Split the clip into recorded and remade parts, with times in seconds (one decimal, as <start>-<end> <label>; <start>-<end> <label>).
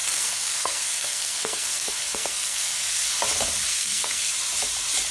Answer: 0.0-3.1 remade; 3.1-3.7 recorded; 3.7-4.3 remade; 4.3-5.1 recorded